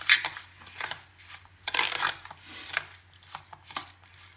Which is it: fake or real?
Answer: real